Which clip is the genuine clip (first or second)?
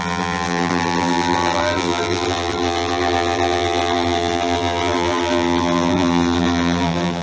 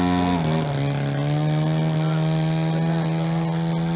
second